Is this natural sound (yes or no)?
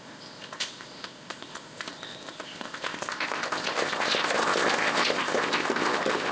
no